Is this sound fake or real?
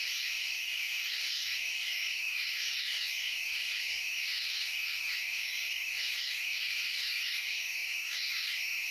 fake